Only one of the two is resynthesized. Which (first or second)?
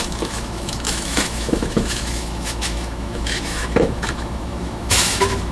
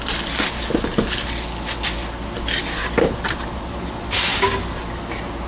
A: first